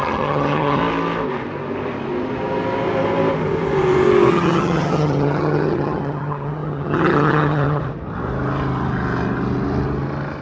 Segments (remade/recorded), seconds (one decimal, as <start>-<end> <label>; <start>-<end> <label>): 0.0-0.8 remade; 0.8-4.3 recorded; 4.3-7.8 remade; 7.8-10.4 recorded